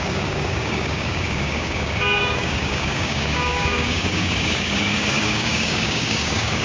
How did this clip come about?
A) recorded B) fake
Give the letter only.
B